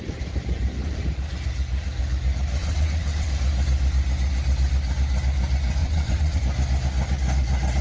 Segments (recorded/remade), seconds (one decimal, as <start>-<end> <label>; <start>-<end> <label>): 0.0-2.6 recorded; 2.6-3.3 remade; 3.3-5.8 recorded; 5.8-6.4 remade; 6.4-7.8 recorded

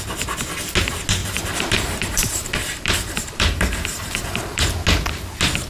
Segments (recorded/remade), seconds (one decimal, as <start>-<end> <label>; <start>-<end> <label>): 0.0-1.2 recorded; 1.2-4.6 remade; 4.6-5.7 recorded

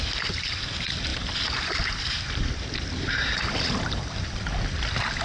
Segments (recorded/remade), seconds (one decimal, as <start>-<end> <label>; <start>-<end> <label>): 0.0-1.1 recorded; 1.1-4.2 remade; 4.2-5.2 recorded

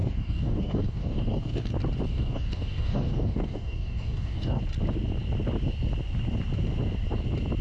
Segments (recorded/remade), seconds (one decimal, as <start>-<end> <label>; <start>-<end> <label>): 0.0-1.7 remade; 1.7-2.1 recorded; 2.1-4.6 remade; 4.6-7.6 recorded

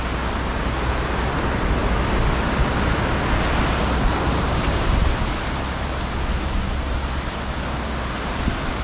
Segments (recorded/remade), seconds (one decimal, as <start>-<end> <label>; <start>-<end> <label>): 0.0-8.8 recorded

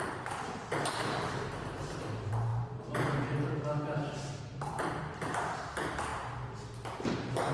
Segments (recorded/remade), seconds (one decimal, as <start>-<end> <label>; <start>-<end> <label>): 0.0-2.5 remade; 2.5-4.4 recorded; 4.4-6.1 remade; 6.1-7.1 recorded; 7.1-7.5 remade

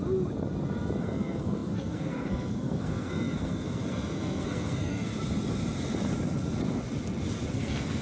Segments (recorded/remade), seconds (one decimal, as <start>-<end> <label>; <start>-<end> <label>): 0.0-1.0 recorded; 1.0-5.1 remade; 5.1-7.5 recorded; 7.5-8.0 remade